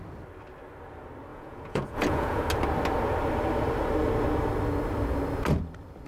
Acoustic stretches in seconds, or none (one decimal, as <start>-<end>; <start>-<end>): 0.0-1.3; 2.4-6.1